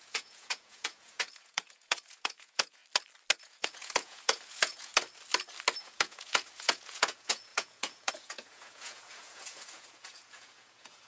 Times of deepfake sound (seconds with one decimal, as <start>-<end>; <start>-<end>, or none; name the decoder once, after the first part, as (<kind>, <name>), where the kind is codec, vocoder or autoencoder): 0.0-2.8 (vocoder, Vocos); 3.4-4.9; 5.8-11.1